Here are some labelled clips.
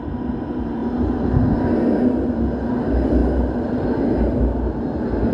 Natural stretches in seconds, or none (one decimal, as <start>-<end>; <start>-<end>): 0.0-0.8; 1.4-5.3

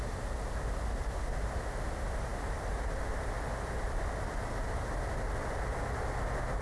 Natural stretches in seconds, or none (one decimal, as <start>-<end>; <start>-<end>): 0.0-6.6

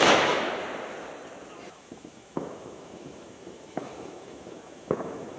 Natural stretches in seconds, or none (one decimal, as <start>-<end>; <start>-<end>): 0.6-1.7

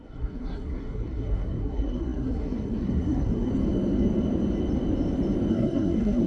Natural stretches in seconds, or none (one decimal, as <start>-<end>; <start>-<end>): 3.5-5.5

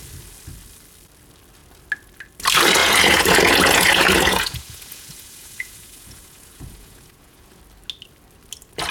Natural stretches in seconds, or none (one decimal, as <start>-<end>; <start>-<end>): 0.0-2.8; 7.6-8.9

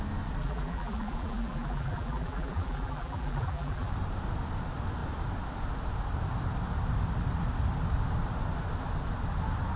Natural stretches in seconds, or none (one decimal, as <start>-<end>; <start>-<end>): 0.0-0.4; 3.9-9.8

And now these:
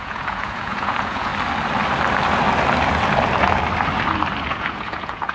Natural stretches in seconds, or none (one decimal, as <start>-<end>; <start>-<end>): 1.3-4.5